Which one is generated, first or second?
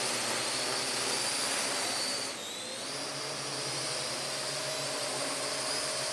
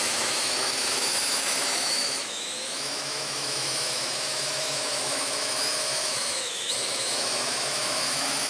second